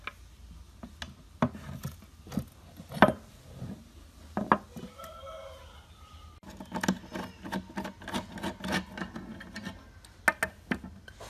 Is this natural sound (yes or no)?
yes